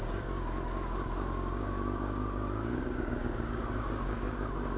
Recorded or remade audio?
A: remade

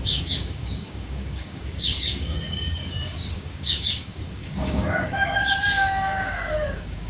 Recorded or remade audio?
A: remade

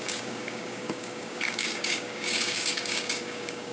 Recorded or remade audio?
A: remade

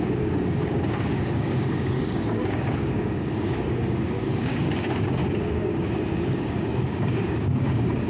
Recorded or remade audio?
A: remade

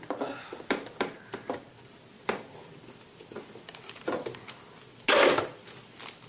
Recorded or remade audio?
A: recorded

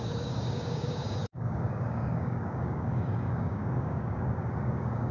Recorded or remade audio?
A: remade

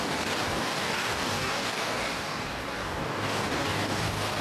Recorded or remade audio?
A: remade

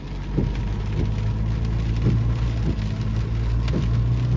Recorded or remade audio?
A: recorded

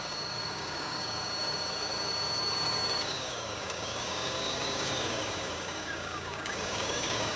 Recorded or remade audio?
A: remade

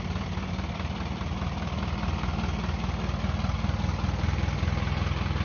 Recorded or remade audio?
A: recorded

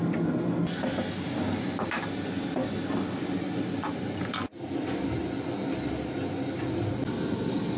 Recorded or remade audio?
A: recorded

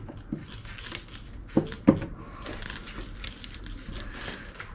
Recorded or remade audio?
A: recorded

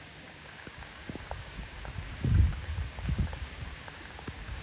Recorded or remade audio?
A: remade